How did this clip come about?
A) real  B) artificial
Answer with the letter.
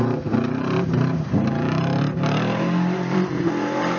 B